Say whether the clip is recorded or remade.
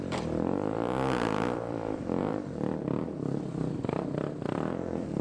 remade